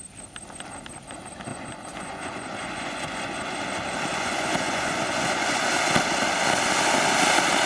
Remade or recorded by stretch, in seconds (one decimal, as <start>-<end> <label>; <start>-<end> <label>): 0.0-1.5 recorded; 1.5-3.6 remade; 3.6-4.1 recorded; 4.1-5.7 remade; 5.7-7.7 recorded